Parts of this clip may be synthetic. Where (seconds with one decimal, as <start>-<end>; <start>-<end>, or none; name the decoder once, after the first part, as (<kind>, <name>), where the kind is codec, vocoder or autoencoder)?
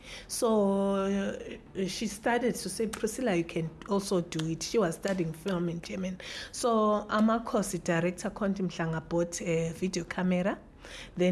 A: none